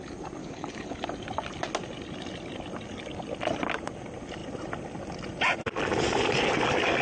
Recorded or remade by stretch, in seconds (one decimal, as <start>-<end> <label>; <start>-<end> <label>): 0.0-0.4 recorded; 0.4-1.0 remade; 1.0-7.0 recorded